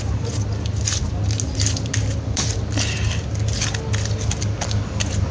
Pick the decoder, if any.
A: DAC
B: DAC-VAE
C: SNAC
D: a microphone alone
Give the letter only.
D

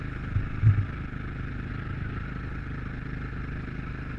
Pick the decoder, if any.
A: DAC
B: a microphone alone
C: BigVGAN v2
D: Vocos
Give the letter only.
B